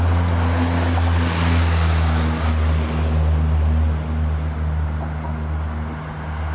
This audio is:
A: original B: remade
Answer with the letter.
A